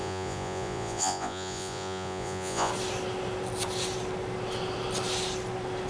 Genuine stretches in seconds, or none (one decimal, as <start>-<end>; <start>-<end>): 2.7-5.9